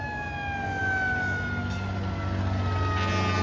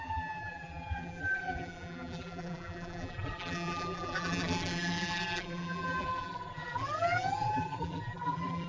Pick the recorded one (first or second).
first